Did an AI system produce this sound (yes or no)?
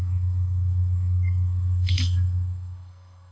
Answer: yes